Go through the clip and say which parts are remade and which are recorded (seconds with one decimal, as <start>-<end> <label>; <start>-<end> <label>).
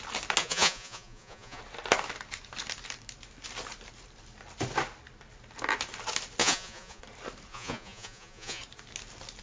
0.0-0.4 recorded; 0.4-1.6 remade; 1.6-6.4 recorded; 6.4-7.0 remade; 7.0-7.5 recorded; 7.5-8.6 remade; 8.6-9.4 recorded